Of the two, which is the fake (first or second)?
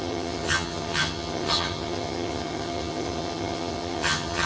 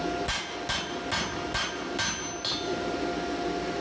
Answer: first